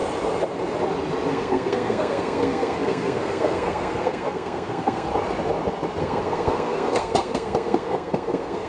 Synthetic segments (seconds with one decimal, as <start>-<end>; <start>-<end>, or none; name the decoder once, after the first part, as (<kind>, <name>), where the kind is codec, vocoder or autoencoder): 1.3-5.1 (codec, SNAC); 6.0-8.7